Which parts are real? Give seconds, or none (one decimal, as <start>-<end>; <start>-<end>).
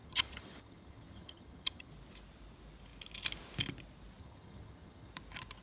1.9-4.2; 5.1-5.6